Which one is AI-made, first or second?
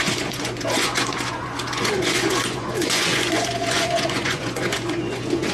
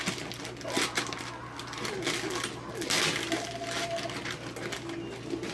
first